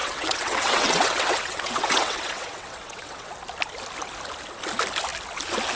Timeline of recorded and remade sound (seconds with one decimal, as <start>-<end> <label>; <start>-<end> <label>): 0.0-3.3 remade; 3.3-5.8 recorded